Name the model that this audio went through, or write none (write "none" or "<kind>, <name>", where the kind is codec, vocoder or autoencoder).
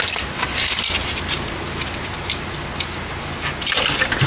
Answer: none